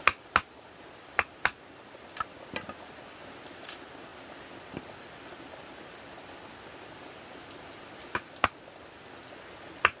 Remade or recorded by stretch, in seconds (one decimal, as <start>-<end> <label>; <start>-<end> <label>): 0.0-10.0 recorded